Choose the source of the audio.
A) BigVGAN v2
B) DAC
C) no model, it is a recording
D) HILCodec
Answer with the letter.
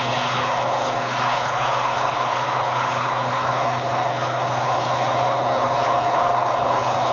D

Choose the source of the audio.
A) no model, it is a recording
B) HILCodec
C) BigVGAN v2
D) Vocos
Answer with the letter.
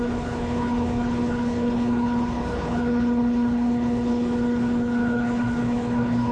B